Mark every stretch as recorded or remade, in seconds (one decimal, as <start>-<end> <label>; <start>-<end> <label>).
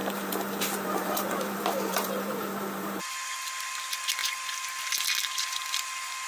0.0-3.0 remade; 3.0-6.3 recorded